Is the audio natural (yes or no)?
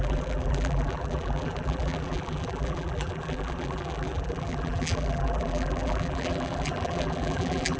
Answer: no